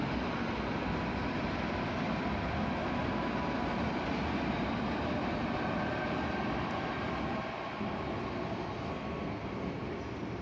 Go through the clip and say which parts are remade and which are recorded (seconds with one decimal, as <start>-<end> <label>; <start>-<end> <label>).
0.0-8.9 recorded; 8.9-9.5 remade; 9.5-10.4 recorded